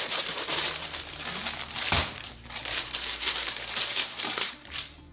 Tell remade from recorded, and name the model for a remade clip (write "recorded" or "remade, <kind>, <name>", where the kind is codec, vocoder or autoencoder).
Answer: remade, vocoder, BigVGAN v2